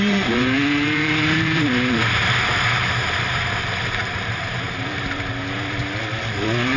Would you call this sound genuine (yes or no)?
no